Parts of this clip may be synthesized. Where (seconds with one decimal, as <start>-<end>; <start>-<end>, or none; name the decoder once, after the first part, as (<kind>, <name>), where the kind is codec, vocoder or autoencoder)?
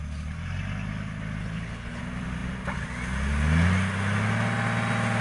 1.4-2.0 (codec, HILCodec)